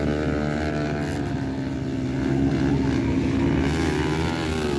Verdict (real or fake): real